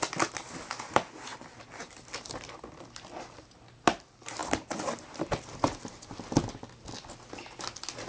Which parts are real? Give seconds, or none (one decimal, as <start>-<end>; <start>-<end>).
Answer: 0.0-1.3; 2.0-8.1